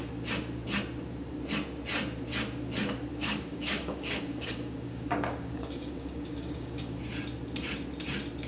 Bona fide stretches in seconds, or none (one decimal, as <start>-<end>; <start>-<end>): 0.0-3.1; 7.0-8.5